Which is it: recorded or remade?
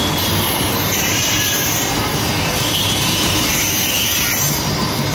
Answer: remade